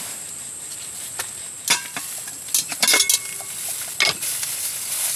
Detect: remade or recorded recorded